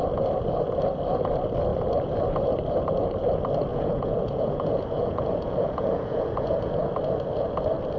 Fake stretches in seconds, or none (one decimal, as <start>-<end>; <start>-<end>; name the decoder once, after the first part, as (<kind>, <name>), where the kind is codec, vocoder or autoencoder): 3.7-6.9 (vocoder, Vocos)